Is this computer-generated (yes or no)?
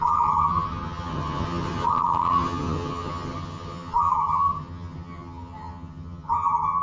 yes